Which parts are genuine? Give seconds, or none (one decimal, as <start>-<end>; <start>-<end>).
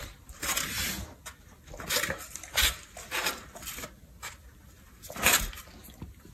0.0-6.3